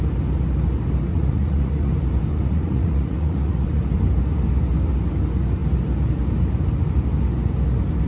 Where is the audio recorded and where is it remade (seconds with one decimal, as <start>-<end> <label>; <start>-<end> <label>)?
0.0-1.1 recorded; 1.1-1.9 remade; 1.9-2.3 recorded; 2.3-3.8 remade; 3.8-8.1 recorded